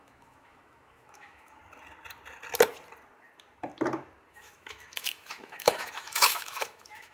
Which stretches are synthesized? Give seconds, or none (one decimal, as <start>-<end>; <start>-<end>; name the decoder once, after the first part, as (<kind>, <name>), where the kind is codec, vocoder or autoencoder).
0.0-1.6 (autoencoder, DAC-VAE); 4.3-7.1